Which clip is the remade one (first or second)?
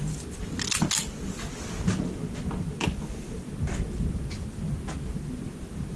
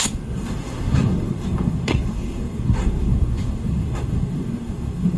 second